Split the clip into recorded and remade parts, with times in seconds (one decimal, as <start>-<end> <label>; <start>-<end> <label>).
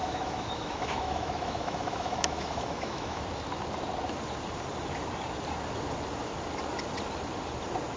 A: 0.0-3.2 remade; 3.2-8.0 recorded